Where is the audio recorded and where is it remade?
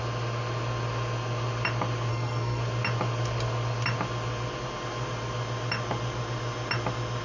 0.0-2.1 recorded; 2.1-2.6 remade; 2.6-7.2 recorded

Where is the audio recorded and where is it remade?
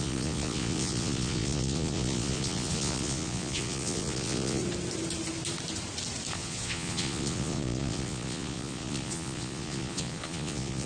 0.0-4.6 remade; 4.6-6.3 recorded; 6.3-10.9 remade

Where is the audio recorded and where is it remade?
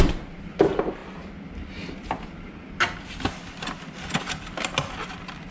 0.0-5.5 recorded